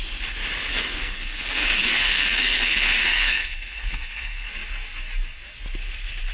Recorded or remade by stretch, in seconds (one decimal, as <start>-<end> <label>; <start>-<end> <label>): 0.0-0.7 recorded; 0.7-4.5 remade; 4.5-6.3 recorded